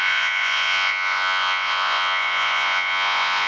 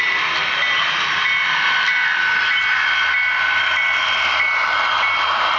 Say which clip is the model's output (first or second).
first